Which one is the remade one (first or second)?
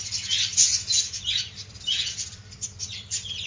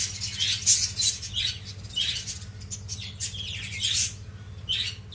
first